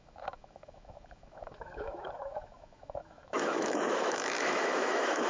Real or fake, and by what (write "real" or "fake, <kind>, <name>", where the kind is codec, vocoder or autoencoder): fake, autoencoder, DAC-VAE